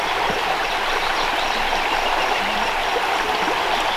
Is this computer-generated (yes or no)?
no